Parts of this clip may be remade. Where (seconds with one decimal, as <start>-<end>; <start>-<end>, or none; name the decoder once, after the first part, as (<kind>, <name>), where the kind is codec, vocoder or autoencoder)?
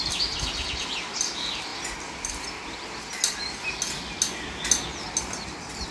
0.0-1.7 (vocoder, BigVGAN v2); 5.2-5.9